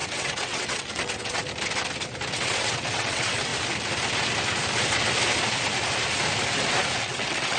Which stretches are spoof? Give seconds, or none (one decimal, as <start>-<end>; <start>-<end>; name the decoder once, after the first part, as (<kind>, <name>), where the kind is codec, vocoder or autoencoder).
0.0-1.4 (vocoder, WaveNeXt); 2.4-3.5; 7.0-7.6